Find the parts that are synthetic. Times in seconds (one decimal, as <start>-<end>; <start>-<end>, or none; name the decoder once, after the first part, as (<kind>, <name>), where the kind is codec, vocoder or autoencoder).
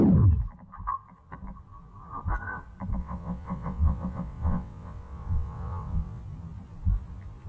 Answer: 3.0-6.2 (vocoder, WaveNeXt)